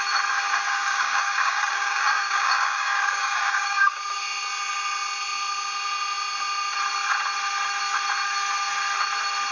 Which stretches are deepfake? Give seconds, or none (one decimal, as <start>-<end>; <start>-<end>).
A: 0.7-4.0